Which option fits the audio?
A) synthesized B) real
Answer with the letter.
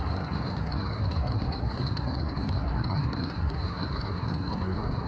A